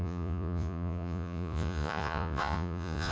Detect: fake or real fake